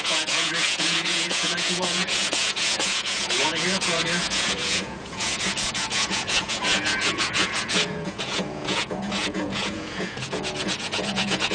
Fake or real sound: fake